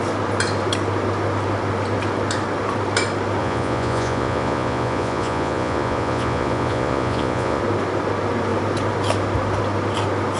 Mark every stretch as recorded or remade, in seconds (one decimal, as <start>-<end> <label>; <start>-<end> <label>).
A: 0.0-3.4 recorded; 3.4-7.6 remade; 7.6-10.4 recorded